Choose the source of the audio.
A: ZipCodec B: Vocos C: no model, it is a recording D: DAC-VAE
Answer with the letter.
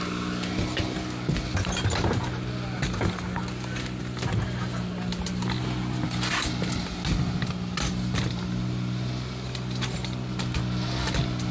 C